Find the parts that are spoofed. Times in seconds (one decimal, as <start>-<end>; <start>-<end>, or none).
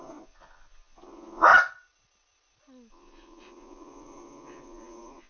0.0-1.5; 2.9-5.3